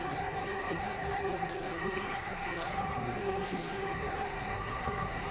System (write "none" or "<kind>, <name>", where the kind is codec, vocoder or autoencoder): codec, SNAC